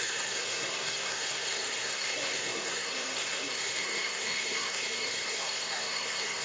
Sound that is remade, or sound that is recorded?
remade